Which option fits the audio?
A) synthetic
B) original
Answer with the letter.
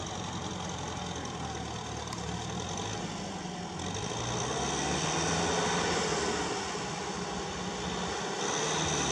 B